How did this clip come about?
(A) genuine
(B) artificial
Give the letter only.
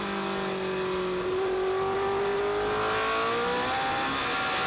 A